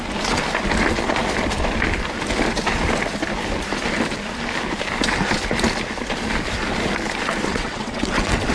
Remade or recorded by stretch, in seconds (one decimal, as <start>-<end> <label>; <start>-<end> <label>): 0.0-7.5 recorded; 7.5-8.5 remade